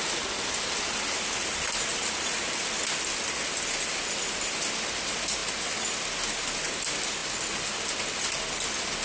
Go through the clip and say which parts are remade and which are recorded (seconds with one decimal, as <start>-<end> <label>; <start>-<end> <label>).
0.0-9.0 recorded